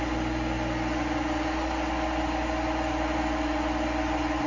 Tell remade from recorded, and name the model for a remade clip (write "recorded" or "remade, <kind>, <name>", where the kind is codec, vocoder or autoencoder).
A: recorded